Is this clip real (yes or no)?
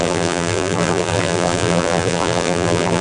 no